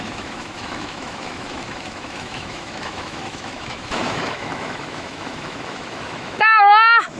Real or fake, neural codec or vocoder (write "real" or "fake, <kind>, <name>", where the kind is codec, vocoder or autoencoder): fake, autoencoder, DAC-VAE